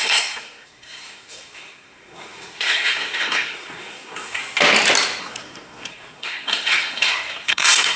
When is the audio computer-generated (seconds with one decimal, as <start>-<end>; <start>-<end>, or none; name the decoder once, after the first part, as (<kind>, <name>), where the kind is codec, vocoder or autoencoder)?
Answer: 0.0-4.4 (codec, SNAC); 5.2-8.0

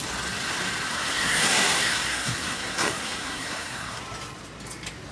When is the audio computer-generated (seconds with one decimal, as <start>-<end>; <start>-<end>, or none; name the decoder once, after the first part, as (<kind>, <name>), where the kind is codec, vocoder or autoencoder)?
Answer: 0.9-4.0 (codec, SNAC)

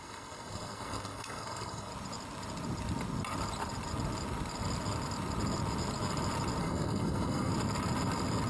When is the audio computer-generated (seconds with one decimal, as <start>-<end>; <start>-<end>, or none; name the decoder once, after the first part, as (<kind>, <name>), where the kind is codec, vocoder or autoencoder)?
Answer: 0.0-1.9 (codec, SNAC); 6.6-7.5